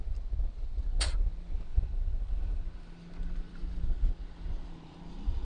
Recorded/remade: recorded